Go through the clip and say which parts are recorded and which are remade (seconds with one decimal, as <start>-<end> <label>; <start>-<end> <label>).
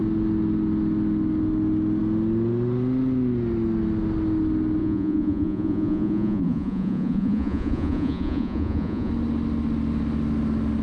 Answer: 0.0-4.8 recorded; 4.8-9.1 remade; 9.1-10.8 recorded